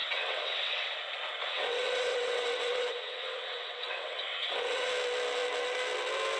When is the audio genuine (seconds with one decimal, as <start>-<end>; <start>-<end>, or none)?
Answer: 0.9-1.4; 4.9-6.4